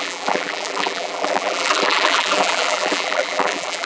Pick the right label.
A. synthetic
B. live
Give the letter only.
A